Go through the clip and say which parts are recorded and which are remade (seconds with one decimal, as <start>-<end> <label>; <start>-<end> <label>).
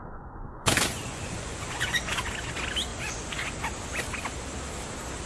0.0-2.2 remade; 2.2-2.9 recorded; 2.9-3.6 remade; 3.6-5.3 recorded